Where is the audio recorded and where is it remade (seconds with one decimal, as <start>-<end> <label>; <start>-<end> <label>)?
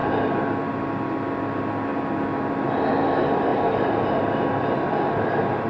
0.0-3.5 recorded; 3.5-4.2 remade; 4.2-5.7 recorded